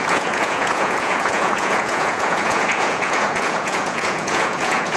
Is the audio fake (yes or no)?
yes